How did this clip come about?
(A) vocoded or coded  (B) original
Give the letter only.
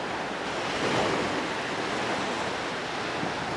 B